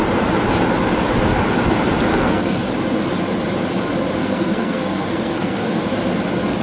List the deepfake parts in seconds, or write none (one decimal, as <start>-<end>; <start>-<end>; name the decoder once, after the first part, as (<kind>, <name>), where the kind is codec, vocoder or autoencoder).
2.1-2.7 (codec, SNAC); 4.2-5.8